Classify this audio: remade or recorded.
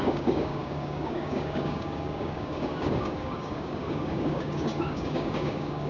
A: remade